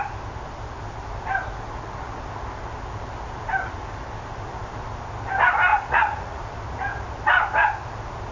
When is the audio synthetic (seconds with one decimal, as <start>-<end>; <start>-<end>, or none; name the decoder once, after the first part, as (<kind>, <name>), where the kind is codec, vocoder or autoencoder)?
5.7-6.5 (vocoder, Vocos)

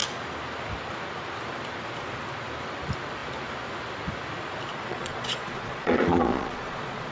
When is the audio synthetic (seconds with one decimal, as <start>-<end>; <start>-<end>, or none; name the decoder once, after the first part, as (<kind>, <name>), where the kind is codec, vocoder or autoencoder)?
4.7-7.1 (vocoder, Vocos)

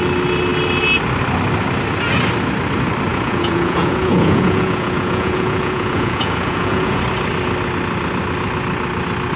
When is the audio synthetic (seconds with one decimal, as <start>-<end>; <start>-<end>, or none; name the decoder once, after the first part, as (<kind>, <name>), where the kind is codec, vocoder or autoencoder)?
3.1-7.0 (vocoder, Vocos)

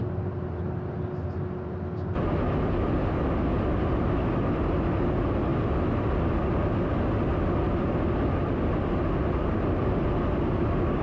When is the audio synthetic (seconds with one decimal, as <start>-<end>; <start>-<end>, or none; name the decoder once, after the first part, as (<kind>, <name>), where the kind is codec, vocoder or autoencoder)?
none

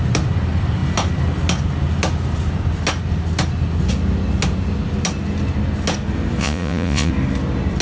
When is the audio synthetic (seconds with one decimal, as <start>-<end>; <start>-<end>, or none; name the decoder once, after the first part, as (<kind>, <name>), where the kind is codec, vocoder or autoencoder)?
6.4-7.1 (vocoder, Vocos)

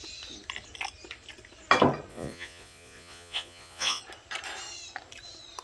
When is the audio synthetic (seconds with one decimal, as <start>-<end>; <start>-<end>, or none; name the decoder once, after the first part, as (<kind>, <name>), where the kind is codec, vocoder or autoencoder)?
2.1-4.0 (vocoder, Vocos)

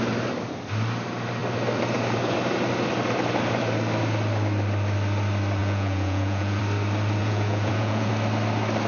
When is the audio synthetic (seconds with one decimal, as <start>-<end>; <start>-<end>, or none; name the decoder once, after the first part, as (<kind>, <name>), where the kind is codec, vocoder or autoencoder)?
5.6-6.6 (vocoder, Vocos); 7.2-8.1

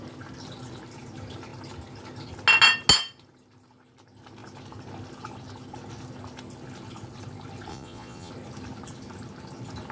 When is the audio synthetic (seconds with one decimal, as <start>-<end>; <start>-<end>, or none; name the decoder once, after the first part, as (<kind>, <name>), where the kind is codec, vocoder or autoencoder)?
7.7-8.3 (vocoder, Vocos)